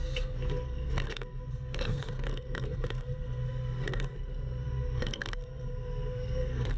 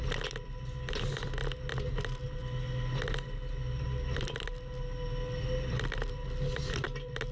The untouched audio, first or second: second